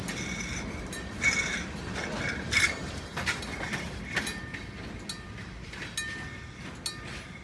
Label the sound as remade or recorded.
recorded